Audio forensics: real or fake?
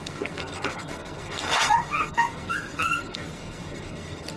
fake